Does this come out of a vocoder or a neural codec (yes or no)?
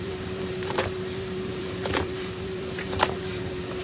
yes